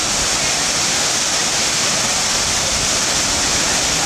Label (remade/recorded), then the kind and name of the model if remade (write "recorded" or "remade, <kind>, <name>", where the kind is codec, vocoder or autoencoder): recorded